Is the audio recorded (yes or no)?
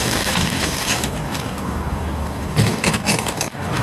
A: no